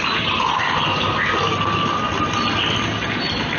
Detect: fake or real real